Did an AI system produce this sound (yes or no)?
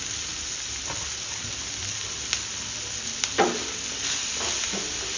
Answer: no